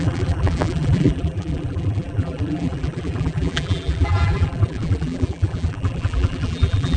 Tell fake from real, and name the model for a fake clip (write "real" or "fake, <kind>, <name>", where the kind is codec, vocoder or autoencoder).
fake, vocoder, BigVGAN v2